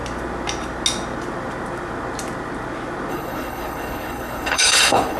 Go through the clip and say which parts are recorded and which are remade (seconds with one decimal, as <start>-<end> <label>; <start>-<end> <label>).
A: 0.0-3.1 recorded; 3.1-5.2 remade